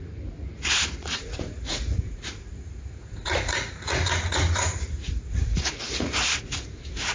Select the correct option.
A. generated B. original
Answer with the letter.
A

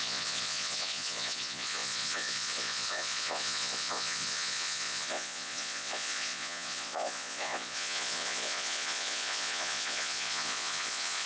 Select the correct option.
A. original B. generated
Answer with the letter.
B